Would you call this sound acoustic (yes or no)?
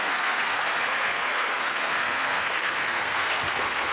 no